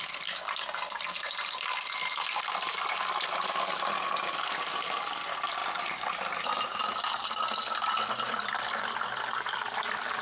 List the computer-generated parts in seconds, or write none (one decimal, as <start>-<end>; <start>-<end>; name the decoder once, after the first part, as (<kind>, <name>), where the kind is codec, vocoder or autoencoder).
none